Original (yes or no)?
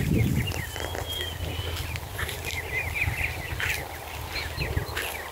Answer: yes